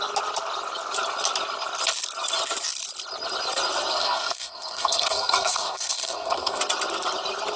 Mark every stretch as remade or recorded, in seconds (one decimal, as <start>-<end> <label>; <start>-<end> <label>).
0.0-3.9 recorded; 3.9-6.6 remade; 6.6-7.6 recorded